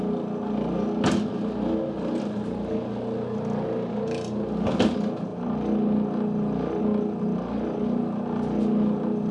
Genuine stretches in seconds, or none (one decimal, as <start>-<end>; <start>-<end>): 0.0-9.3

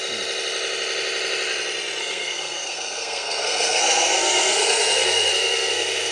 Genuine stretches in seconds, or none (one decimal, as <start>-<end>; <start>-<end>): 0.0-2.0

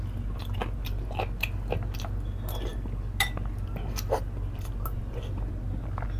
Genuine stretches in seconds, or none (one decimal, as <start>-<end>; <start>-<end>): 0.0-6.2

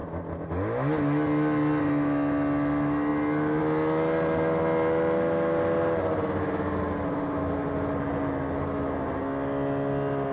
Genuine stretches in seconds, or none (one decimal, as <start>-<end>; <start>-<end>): 0.0-10.3

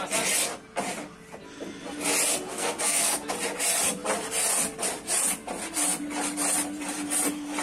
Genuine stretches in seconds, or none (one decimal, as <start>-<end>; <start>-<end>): 0.0-2.5; 3.3-7.6

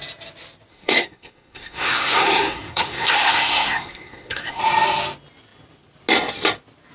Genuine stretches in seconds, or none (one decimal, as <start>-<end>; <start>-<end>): 0.0-0.7; 4.6-6.9

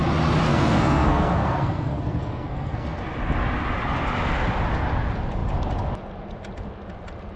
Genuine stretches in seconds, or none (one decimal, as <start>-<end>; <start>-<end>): 0.0-0.5; 3.0-7.4

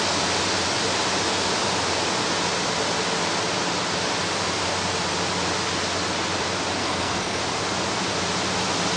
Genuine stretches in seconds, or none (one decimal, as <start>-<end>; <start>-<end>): 0.0-6.8; 7.4-9.0